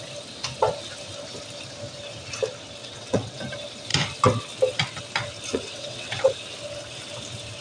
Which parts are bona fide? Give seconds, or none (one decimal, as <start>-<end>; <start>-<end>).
0.0-2.8; 3.4-5.5; 6.3-7.6